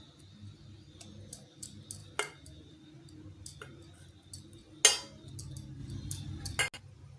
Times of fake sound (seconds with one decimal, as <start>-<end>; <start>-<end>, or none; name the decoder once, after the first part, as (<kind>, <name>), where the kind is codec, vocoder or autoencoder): none